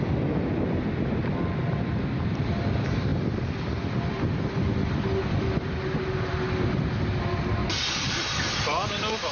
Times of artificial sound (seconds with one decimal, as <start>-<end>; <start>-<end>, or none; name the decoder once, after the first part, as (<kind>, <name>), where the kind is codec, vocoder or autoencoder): 7.6-8.3 (vocoder, BigVGAN v2)